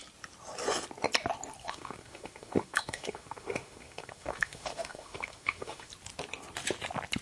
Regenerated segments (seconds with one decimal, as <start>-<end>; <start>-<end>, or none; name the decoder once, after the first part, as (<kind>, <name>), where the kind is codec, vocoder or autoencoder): 1.6-5.9 (autoencoder, DAC-VAE)